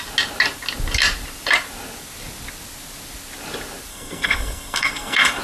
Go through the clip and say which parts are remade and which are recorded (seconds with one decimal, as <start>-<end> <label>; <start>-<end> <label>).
0.0-3.9 recorded; 3.9-5.4 remade